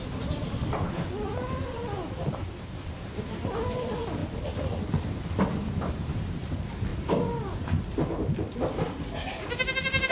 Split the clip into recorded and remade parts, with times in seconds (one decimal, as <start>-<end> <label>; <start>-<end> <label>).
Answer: 0.0-10.1 recorded